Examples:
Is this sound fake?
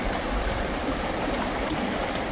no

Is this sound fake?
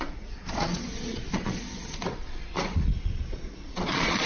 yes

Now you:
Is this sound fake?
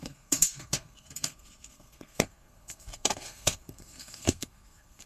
yes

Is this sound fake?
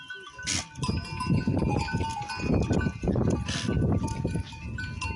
no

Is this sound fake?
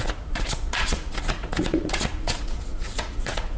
yes